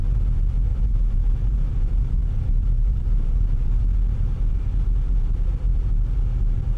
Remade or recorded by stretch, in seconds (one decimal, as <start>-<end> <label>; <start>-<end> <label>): 0.0-0.7 recorded; 0.7-1.7 remade; 1.7-2.2 recorded; 2.2-3.8 remade; 3.8-6.8 recorded

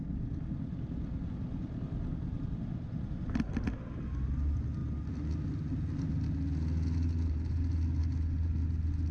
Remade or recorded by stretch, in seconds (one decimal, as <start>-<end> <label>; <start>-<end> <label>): 0.0-9.1 recorded